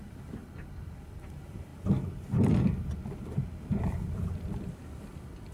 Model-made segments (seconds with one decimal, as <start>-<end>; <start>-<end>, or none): 0.0-1.7; 4.3-5.5